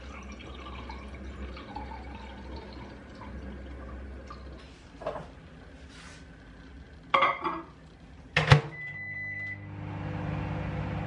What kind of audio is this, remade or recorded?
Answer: recorded